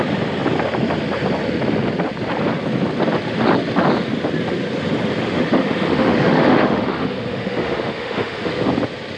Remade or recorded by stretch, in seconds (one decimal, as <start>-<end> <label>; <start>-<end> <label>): 0.0-5.2 recorded; 5.2-8.5 remade; 8.5-9.2 recorded